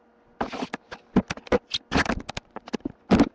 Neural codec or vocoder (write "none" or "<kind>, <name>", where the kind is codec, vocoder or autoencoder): none